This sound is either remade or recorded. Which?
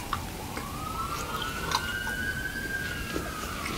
recorded